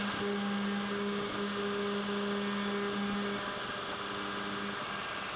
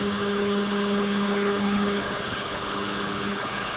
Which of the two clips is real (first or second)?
first